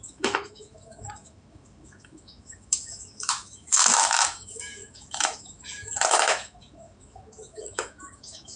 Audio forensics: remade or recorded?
remade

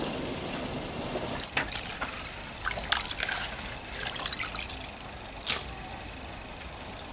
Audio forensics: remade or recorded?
recorded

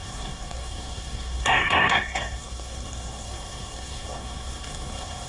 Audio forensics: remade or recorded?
remade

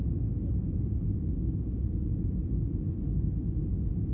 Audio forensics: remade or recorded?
remade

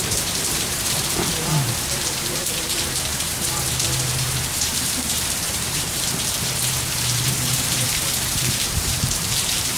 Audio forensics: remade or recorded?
remade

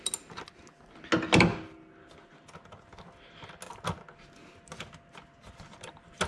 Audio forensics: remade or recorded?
recorded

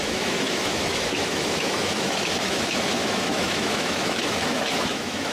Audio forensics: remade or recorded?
remade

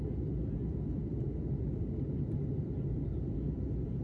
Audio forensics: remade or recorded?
recorded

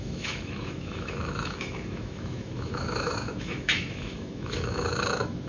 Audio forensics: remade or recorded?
remade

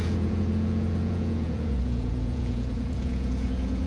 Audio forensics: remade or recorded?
remade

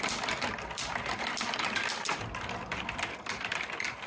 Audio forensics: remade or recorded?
recorded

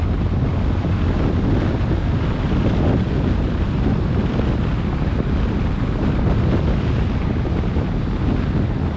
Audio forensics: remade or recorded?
recorded